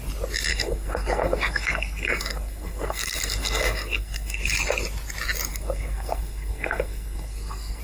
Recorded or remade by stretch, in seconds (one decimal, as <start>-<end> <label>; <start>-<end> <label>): 0.0-0.5 recorded; 0.5-4.4 remade; 4.4-5.5 recorded; 5.5-7.8 remade